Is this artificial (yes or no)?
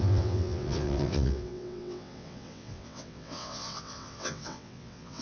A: yes